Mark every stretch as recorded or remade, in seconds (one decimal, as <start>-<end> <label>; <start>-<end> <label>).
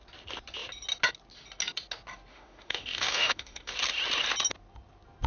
0.0-2.3 recorded; 2.3-3.7 remade; 3.7-5.3 recorded